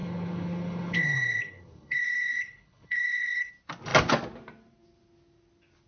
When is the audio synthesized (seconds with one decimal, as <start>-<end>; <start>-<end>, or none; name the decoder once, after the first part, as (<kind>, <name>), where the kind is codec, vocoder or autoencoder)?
0.0-3.5 (codec, HILCodec)